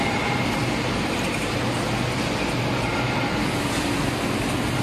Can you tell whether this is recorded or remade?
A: recorded